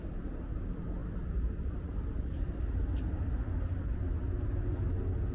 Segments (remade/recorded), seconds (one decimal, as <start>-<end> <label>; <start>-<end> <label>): 0.0-5.3 recorded